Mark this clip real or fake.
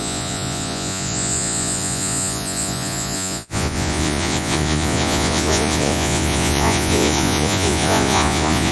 fake